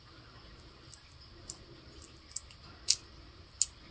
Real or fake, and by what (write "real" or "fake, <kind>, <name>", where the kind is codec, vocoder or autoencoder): real